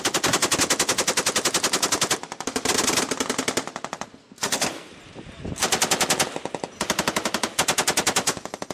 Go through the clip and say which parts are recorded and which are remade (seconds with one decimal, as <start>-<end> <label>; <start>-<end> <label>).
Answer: 0.0-4.2 recorded; 4.2-4.9 remade; 4.9-8.7 recorded